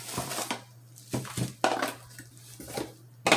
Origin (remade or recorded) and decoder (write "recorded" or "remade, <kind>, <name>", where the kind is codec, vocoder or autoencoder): recorded